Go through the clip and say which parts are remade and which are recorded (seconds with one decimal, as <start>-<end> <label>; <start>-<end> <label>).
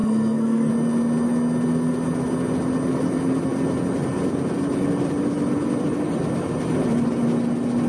0.0-0.7 remade; 0.7-7.9 recorded